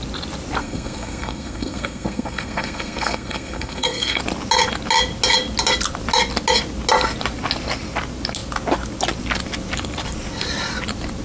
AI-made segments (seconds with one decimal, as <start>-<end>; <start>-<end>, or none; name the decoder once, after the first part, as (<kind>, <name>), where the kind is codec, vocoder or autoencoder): 0.6-4.2 (codec, SNAC)